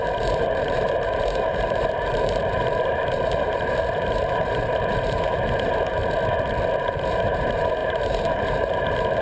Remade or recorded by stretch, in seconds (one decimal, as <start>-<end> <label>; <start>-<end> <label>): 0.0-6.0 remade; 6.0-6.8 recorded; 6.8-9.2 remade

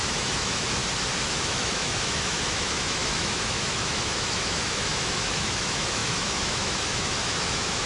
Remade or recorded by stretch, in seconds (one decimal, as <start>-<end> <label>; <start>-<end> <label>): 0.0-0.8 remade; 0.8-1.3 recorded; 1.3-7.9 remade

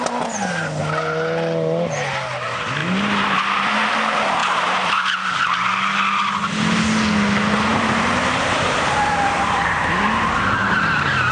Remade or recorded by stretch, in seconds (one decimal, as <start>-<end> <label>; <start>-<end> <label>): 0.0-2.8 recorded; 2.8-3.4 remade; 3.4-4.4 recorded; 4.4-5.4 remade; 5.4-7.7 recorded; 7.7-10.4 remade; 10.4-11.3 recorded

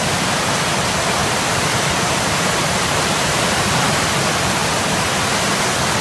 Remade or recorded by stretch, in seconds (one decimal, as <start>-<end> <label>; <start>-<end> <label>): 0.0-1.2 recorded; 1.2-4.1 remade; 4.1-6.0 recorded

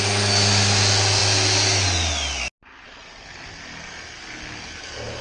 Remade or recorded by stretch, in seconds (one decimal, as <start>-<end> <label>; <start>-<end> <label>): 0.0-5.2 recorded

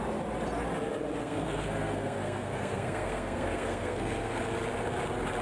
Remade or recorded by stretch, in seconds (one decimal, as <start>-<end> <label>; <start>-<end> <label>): 0.0-1.2 recorded; 1.2-4.4 remade; 4.4-5.4 recorded

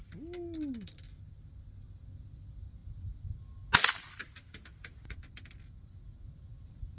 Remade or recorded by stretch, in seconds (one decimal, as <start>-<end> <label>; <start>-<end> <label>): 0.0-7.0 recorded

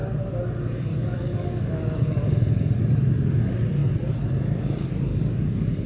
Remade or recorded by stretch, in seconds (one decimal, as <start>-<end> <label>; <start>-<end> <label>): 0.0-0.9 recorded; 0.9-2.2 remade; 2.2-5.1 recorded; 5.1-5.9 remade